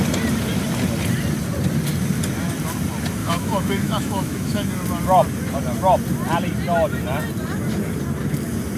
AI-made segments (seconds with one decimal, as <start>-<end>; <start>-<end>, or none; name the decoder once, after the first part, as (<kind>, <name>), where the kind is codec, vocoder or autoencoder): 3.2-4.7 (autoencoder, DAC-VAE)